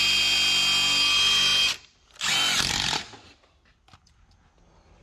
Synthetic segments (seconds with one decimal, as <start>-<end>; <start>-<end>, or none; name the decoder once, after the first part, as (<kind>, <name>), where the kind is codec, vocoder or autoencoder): none